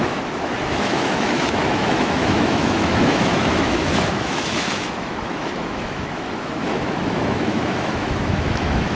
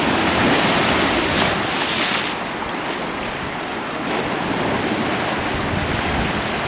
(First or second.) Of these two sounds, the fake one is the first